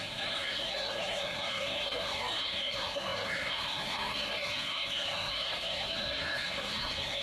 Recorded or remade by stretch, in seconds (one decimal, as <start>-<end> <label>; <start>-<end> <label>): 0.0-7.2 remade